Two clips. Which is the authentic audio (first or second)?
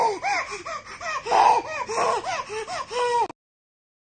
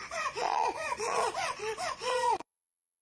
first